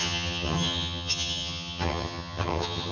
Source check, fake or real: fake